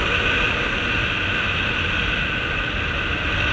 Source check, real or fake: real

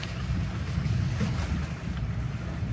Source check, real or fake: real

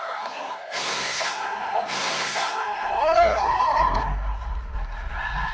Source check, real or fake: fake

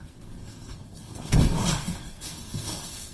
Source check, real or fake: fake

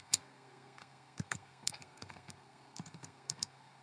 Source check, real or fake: fake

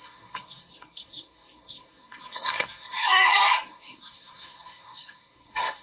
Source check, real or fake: fake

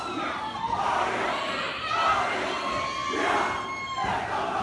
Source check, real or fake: real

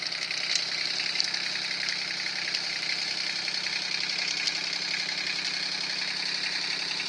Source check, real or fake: real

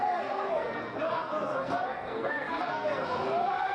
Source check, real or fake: fake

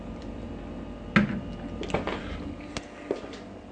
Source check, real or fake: real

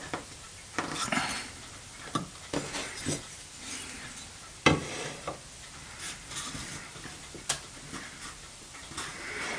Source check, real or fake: real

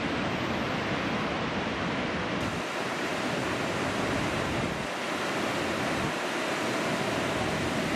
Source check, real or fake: real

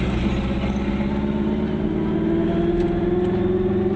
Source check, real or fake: real